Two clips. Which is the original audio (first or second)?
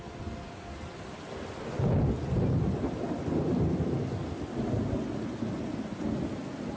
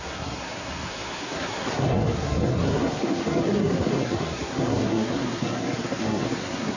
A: first